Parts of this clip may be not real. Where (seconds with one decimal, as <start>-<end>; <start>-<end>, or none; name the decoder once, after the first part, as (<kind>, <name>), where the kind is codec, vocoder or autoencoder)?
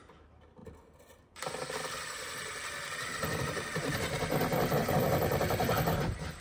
none